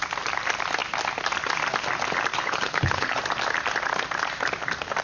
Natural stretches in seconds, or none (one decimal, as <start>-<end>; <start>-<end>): 0.0-2.3; 3.2-5.0